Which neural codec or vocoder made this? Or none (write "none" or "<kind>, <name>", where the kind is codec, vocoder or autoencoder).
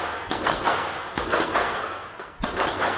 codec, SNAC